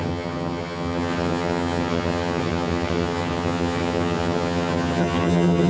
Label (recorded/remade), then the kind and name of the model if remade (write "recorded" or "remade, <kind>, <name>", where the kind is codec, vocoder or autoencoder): remade, vocoder, HiFi-GAN